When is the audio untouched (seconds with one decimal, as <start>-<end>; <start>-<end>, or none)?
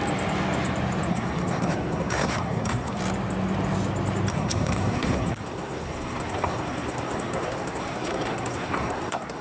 0.0-1.1; 3.0-4.3